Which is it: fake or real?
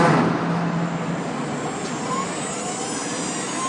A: real